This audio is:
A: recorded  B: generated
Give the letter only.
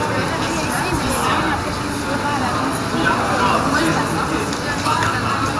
A